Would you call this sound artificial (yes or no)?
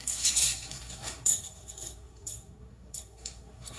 yes